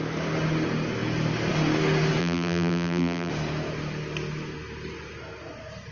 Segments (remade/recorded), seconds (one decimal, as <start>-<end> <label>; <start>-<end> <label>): 0.0-2.2 recorded; 2.2-3.3 remade; 3.3-5.9 recorded